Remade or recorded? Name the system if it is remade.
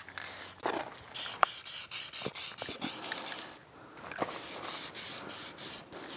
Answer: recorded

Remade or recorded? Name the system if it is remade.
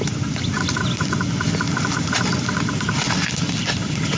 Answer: recorded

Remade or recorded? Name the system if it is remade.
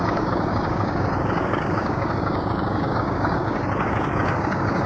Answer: remade, codec, DAC